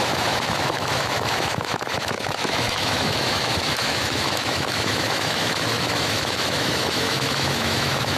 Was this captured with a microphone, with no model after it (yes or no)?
no